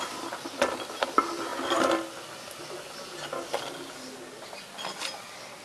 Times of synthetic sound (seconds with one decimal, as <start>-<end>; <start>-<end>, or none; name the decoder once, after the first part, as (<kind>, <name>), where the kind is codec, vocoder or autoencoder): none